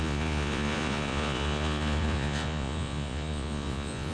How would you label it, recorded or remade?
remade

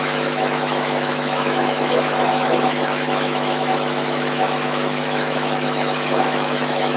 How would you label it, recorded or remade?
remade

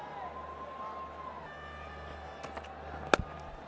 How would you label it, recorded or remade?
recorded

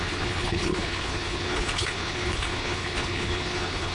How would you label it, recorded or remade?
remade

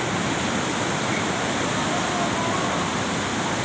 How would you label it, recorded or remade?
recorded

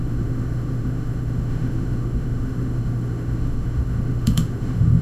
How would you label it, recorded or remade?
remade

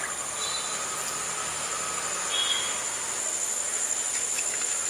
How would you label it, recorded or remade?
recorded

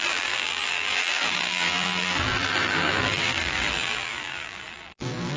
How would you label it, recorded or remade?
remade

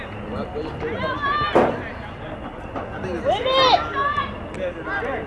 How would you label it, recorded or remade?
recorded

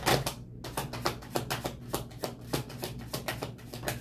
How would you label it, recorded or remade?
recorded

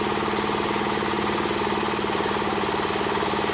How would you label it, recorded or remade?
recorded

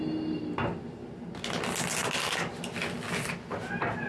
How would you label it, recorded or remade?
recorded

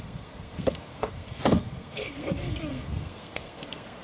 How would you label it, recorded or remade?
remade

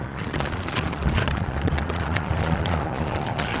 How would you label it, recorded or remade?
remade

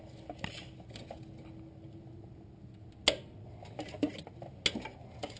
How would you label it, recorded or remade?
recorded